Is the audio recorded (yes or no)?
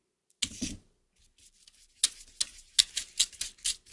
yes